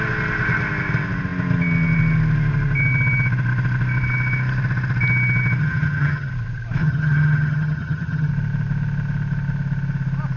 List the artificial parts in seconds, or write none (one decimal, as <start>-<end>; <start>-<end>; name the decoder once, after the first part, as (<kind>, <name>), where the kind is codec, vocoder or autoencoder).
5.6-6.3 (vocoder, HiFi-GAN); 6.8-8.3